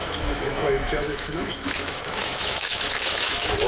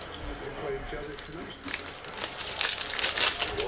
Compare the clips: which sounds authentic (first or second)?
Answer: second